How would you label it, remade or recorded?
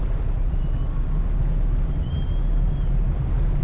recorded